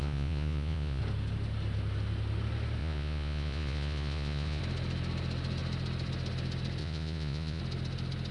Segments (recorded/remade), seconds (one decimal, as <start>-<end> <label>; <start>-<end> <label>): 0.0-1.0 remade; 1.0-2.8 recorded; 2.8-4.6 remade; 4.6-6.8 recorded; 6.8-7.6 remade; 7.6-8.3 recorded